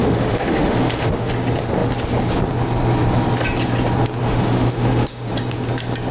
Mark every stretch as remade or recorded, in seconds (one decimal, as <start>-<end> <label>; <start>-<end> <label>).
0.0-1.3 remade; 1.3-4.2 recorded; 4.2-5.3 remade; 5.3-6.1 recorded